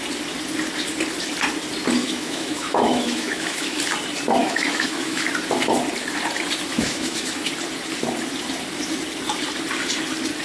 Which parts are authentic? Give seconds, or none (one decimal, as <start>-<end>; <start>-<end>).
0.0-2.0; 3.8-4.4; 5.3-6.7; 7.5-10.4